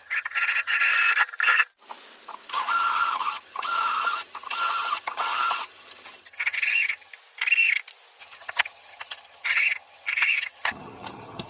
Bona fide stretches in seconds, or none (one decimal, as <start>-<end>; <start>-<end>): 0.9-2.5; 7.1-8.2